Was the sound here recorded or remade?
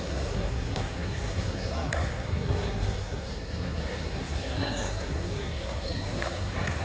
remade